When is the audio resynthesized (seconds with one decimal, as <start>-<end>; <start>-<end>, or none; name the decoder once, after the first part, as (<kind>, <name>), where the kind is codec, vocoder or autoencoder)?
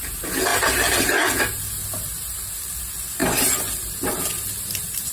none